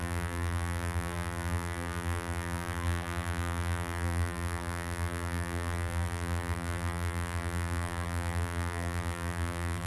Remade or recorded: remade